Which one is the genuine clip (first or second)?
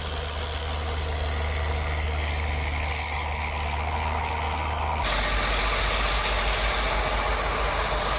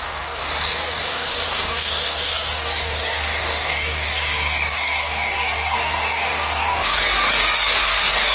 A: first